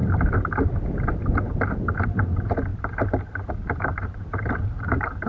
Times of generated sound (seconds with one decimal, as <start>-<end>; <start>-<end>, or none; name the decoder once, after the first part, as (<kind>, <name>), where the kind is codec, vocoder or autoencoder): 2.3-2.7 (vocoder, BigVGAN v2); 3.5-5.3